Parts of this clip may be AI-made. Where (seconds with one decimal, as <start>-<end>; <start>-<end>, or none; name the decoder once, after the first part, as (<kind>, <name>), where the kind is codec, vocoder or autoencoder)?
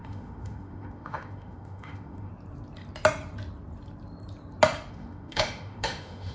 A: 0.0-2.3 (autoencoder, DAC-VAE); 4.9-6.3